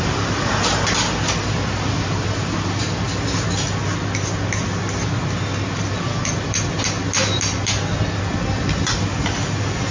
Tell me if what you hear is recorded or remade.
recorded